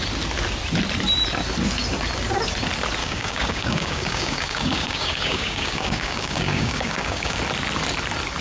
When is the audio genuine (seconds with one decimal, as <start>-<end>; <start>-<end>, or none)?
0.0-3.0; 7.4-8.4